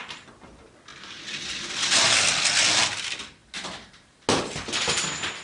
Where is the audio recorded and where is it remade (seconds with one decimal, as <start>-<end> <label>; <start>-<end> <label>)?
0.0-0.9 recorded; 0.9-2.3 remade; 2.3-5.4 recorded